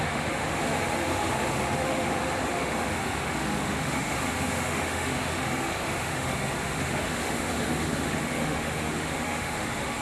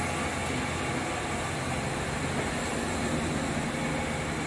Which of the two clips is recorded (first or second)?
second